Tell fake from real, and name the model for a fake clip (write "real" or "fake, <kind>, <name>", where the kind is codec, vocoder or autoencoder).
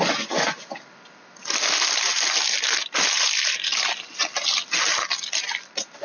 real